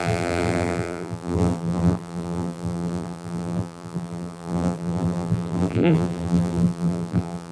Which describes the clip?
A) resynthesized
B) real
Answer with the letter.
A